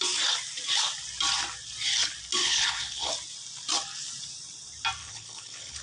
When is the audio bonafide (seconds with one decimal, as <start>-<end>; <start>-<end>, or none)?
0.0-2.4; 3.1-5.0